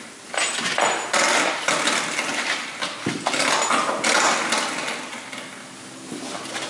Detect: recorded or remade recorded